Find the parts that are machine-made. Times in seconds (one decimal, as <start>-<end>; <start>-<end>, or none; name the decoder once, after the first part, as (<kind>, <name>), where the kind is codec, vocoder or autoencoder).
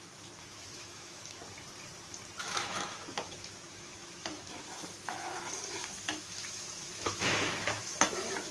0.0-1.4 (autoencoder, DAC-VAE); 2.4-8.5